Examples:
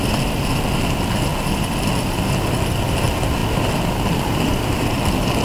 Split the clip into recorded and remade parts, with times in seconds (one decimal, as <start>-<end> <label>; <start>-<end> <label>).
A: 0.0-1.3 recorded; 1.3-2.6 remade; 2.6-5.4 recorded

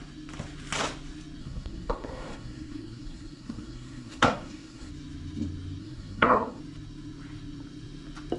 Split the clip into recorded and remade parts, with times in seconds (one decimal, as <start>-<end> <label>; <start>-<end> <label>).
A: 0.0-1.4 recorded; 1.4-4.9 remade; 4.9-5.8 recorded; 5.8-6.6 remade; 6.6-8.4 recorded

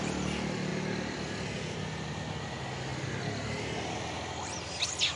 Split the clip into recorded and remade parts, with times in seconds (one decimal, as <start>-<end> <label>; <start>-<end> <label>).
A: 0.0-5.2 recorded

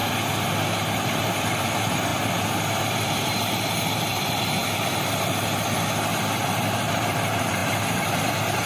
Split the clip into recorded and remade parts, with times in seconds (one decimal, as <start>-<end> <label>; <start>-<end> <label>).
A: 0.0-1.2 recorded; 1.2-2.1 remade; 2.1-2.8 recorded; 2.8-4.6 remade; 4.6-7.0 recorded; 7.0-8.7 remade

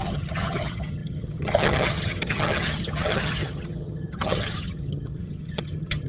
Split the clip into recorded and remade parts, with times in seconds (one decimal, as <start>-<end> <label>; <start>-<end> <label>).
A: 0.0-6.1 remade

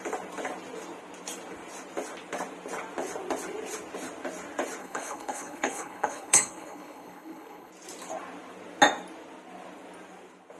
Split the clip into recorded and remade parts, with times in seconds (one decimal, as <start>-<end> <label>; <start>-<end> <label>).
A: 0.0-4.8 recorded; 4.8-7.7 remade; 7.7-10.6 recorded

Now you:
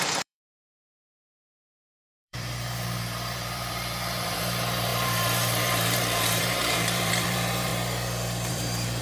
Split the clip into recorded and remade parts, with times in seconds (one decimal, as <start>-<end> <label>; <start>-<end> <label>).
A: 0.0-7.7 remade; 7.7-8.5 recorded; 8.5-9.0 remade